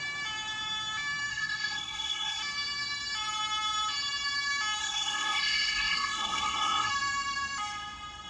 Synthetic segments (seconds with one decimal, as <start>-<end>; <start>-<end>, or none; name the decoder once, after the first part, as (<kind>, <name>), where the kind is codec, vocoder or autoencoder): 1.3-2.4 (codec, SNAC); 4.8-6.9